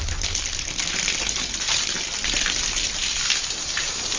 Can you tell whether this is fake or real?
real